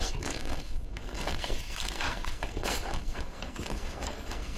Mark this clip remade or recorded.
remade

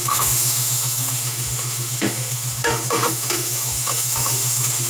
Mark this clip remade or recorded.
remade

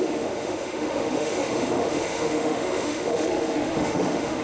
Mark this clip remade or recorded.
remade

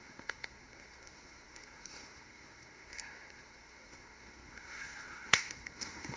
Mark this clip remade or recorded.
remade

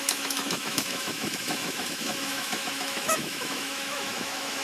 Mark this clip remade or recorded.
remade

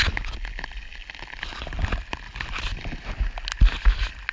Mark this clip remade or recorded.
recorded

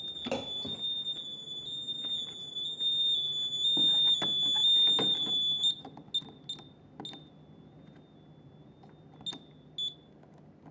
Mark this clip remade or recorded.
recorded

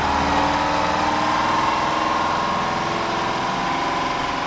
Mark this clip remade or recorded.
recorded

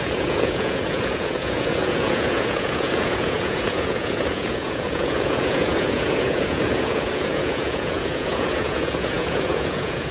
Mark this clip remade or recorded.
remade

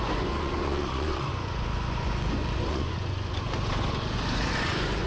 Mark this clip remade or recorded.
remade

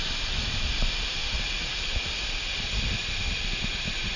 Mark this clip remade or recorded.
recorded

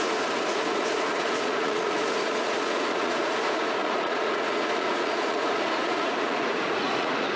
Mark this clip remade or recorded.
remade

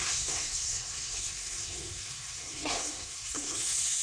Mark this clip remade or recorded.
remade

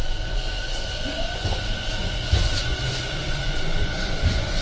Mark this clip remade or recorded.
remade